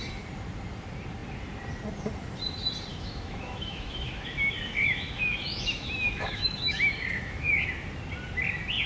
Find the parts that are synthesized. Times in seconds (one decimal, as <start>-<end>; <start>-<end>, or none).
2.9-7.5